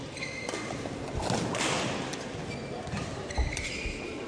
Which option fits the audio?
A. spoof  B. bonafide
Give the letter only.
B